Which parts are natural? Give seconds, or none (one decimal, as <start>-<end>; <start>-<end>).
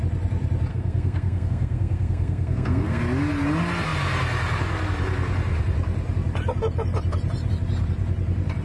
0.0-0.7; 3.0-8.6